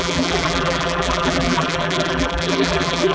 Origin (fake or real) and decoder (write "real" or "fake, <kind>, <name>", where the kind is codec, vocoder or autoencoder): fake, vocoder, BigVGAN v2